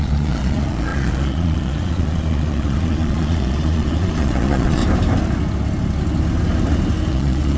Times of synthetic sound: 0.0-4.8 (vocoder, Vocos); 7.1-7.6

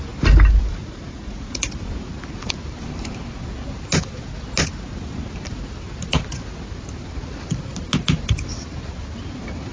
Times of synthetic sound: 0.7-1.7 (vocoder, Vocos)

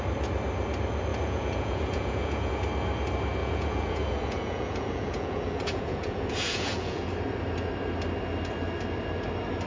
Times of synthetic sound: 1.1-2.5 (vocoder, Vocos); 3.4-7.1

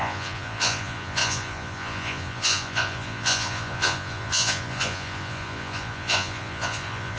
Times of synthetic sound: 0.0-7.2 (vocoder, Vocos)